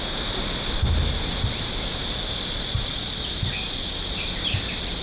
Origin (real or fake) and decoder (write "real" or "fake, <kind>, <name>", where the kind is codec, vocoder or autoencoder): real